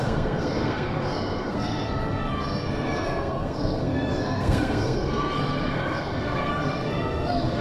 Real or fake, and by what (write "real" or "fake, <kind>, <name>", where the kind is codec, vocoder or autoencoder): fake, codec, SNAC